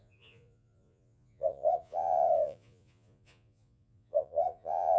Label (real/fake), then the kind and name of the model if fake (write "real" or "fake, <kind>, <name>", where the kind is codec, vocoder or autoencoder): fake, vocoder, Vocos